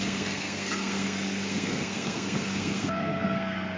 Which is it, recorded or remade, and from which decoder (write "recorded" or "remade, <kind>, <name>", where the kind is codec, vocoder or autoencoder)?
remade, codec, SNAC